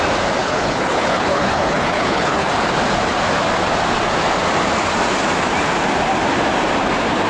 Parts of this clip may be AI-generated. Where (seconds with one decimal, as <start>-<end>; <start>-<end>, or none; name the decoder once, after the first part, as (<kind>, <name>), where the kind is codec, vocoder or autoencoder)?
0.4-2.5 (codec, HILCodec)